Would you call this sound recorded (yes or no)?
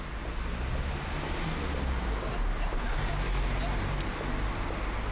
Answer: yes